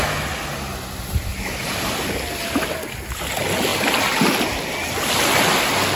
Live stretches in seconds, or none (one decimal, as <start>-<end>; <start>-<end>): 0.0-6.0